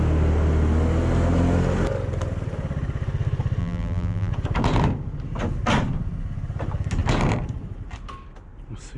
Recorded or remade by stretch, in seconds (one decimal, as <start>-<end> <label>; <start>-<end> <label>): 0.0-3.6 recorded; 3.6-4.3 remade; 4.3-9.0 recorded